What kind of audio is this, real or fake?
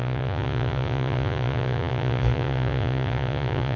fake